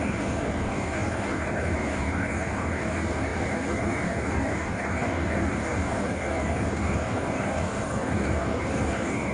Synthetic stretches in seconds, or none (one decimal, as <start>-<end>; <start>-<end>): 0.0-9.3